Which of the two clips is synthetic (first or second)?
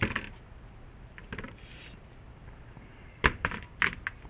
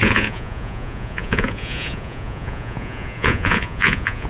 second